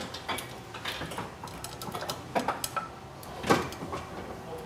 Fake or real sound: real